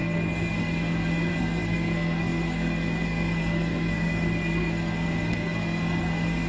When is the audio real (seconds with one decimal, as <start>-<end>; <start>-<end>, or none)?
none